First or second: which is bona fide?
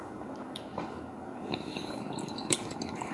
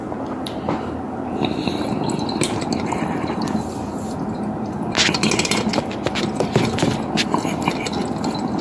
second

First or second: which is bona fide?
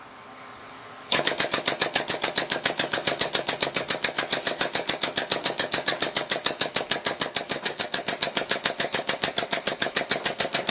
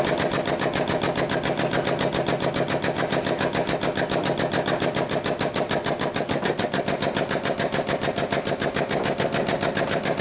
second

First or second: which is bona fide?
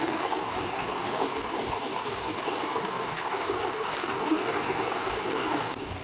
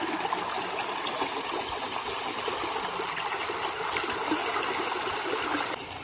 second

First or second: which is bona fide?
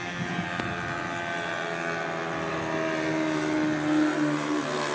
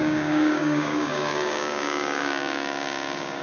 first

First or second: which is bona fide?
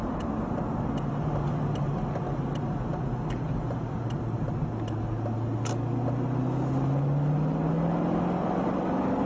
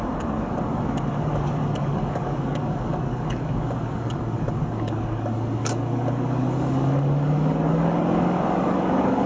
first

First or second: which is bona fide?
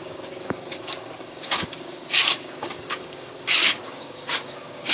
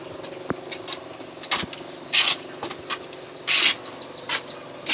second